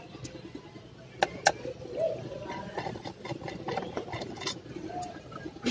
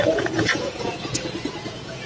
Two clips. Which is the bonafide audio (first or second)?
first